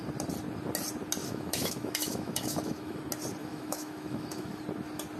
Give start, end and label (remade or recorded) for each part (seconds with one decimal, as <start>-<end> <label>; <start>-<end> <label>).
0.0-1.2 recorded; 1.2-3.0 remade; 3.0-3.4 recorded; 3.4-4.6 remade; 4.6-5.2 recorded